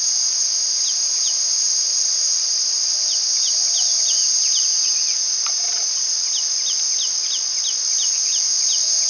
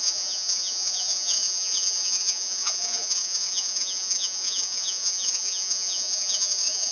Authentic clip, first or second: first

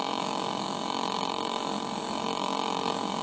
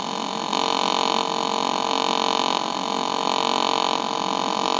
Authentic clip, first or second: second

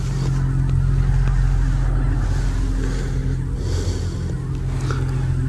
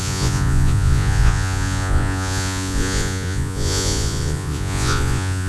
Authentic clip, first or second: first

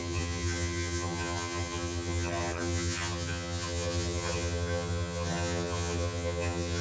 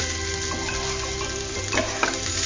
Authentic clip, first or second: second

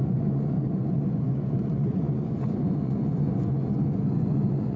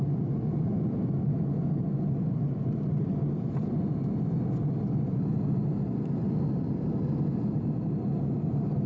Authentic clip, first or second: second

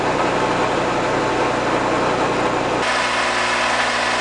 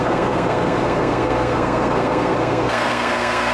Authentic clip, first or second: first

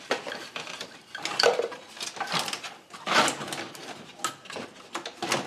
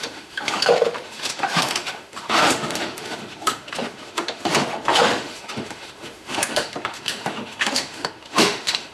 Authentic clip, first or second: first